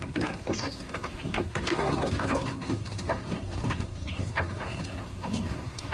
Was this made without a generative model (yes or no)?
no